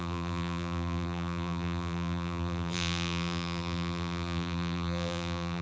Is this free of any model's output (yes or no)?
no